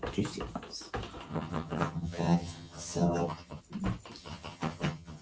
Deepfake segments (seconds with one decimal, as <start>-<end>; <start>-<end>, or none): 1.3-3.6; 4.2-5.2